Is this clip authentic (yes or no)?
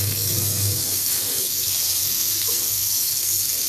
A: no